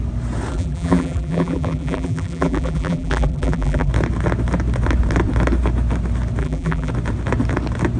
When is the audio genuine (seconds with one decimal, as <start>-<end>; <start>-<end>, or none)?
0.0-0.5; 3.9-6.4; 6.9-8.0